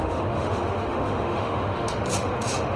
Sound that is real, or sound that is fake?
fake